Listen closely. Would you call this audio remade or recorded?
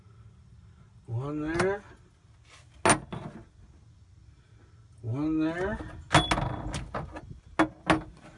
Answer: recorded